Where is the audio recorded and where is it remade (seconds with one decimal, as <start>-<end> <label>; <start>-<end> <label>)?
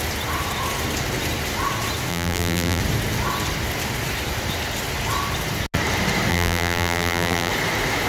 0.0-2.1 recorded; 2.1-2.8 remade; 2.8-6.3 recorded; 6.3-7.5 remade; 7.5-8.1 recorded